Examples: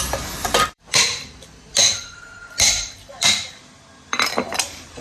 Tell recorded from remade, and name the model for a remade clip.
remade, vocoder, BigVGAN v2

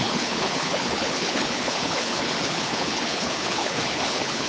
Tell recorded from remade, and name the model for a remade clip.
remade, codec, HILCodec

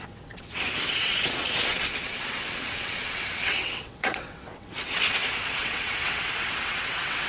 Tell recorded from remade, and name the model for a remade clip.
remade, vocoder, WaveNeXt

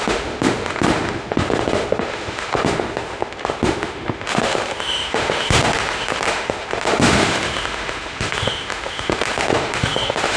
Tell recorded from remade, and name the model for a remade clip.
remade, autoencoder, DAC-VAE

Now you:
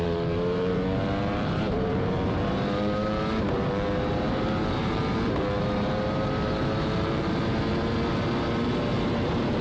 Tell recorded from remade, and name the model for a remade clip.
remade, vocoder, BigVGAN v2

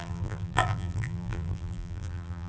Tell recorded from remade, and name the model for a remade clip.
remade, vocoder, BigVGAN v2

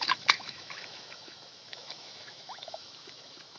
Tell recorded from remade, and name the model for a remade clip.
remade, autoencoder, DAC-VAE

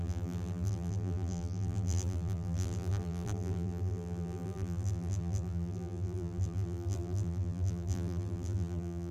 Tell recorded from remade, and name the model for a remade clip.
remade, vocoder, BigVGAN v2